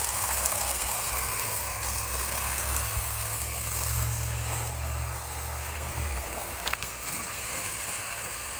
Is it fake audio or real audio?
fake